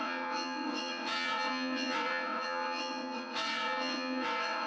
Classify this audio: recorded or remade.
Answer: remade